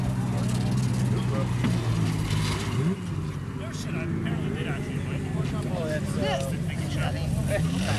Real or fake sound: real